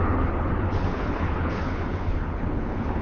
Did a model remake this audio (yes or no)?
yes